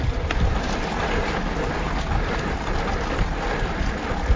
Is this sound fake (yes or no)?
no